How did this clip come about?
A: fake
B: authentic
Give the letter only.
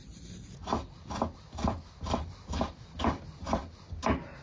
A